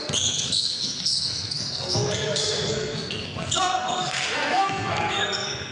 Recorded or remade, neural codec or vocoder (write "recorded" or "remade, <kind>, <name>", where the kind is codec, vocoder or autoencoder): remade, codec, SNAC